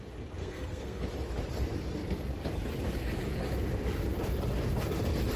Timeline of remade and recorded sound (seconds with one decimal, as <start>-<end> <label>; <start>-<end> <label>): 0.0-0.4 recorded; 0.4-1.0 remade; 1.0-5.4 recorded